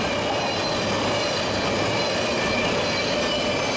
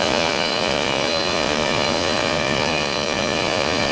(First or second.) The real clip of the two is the first